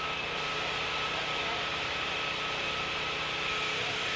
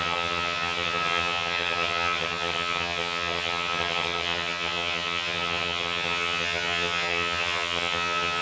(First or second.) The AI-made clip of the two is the second